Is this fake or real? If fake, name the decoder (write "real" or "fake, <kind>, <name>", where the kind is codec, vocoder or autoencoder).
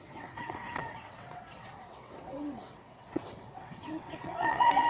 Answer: fake, vocoder, WaveNeXt